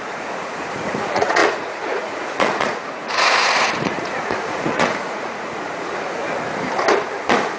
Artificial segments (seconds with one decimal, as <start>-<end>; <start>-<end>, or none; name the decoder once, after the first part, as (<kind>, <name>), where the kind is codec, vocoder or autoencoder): 0.0-6.2 (vocoder, Vocos)